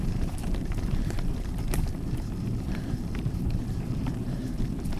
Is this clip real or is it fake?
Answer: fake